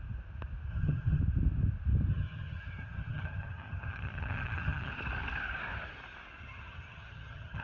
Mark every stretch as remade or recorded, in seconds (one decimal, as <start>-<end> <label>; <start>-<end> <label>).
0.0-0.7 recorded; 0.7-1.2 remade; 1.2-2.1 recorded; 2.1-4.9 remade; 4.9-6.4 recorded; 6.4-7.6 remade